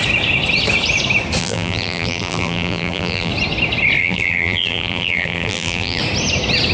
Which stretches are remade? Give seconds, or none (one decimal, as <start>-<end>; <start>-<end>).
1.4-3.3; 4.0-6.0